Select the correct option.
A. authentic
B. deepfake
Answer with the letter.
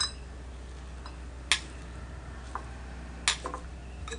A